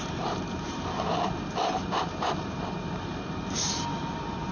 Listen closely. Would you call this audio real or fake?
fake